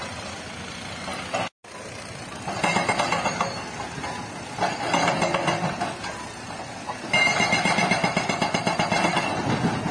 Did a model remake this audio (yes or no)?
no